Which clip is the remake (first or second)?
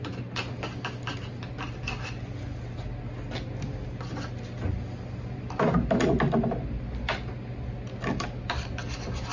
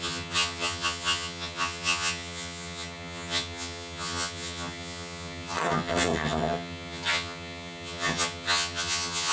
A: second